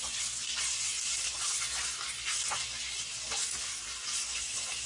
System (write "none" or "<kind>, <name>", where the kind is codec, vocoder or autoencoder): none